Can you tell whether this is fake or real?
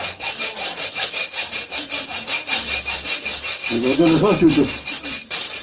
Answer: real